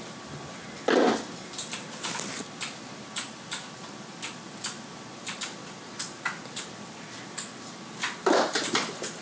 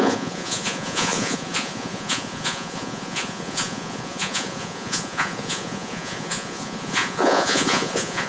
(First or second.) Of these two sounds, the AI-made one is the second